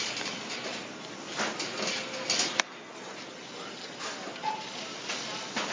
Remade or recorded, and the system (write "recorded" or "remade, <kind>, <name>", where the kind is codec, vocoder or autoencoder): recorded